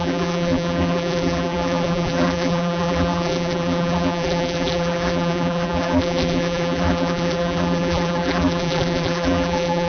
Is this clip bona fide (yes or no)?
no